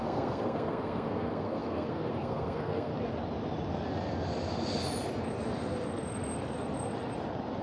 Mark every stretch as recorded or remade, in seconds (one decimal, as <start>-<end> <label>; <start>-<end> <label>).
0.0-2.9 remade; 2.9-7.6 recorded